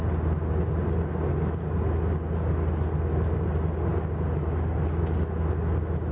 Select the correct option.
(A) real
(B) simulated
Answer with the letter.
A